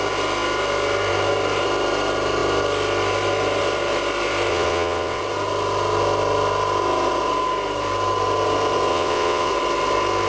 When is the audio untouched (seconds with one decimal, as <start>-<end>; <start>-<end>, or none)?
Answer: 0.0-4.5; 5.2-8.9; 9.5-10.3